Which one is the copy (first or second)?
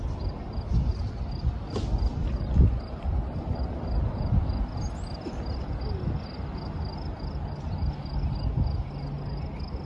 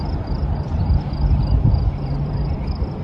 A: second